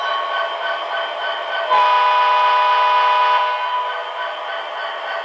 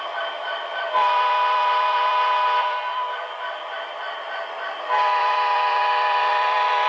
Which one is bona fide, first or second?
first